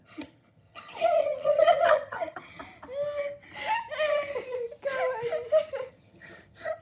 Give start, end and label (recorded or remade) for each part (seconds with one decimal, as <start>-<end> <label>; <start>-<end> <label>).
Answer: 0.0-2.6 remade; 2.6-5.9 recorded; 5.9-6.8 remade